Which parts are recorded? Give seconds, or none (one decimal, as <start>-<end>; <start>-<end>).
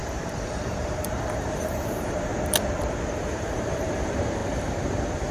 2.3-3.2